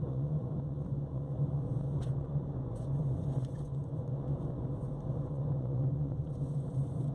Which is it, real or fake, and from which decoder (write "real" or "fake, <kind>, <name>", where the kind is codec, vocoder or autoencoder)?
fake, vocoder, Vocos